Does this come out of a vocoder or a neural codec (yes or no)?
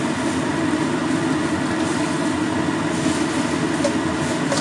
no